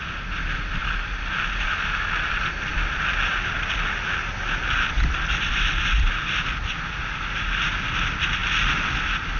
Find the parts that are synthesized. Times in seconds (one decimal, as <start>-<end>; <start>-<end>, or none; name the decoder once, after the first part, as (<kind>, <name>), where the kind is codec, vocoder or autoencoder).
none